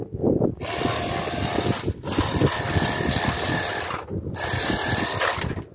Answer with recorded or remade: recorded